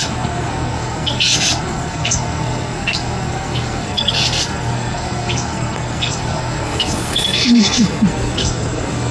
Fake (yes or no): yes